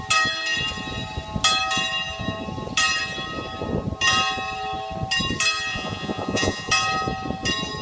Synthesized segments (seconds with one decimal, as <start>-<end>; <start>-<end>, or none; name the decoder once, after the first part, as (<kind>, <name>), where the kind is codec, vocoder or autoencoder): 5.7-6.7 (vocoder, Vocos)